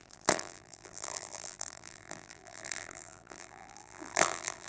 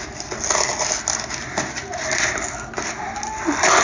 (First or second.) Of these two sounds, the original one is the second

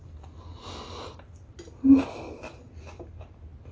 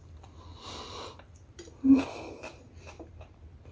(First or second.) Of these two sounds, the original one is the first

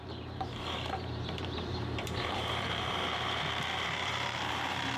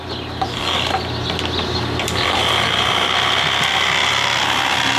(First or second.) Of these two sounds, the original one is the second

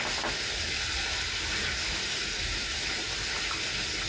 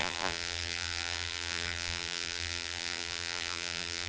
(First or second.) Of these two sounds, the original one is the first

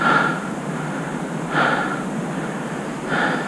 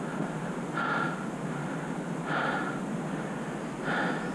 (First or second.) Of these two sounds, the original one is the second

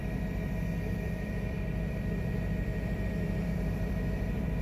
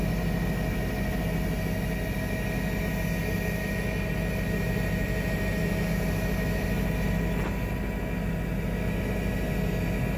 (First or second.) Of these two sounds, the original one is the second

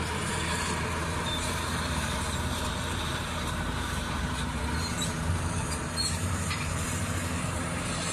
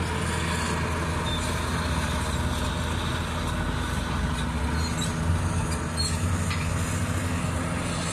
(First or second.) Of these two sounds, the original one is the second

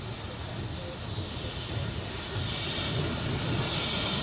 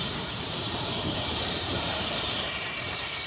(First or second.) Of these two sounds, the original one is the first